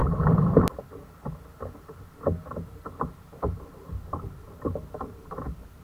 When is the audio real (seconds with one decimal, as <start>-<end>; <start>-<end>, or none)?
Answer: 0.0-5.8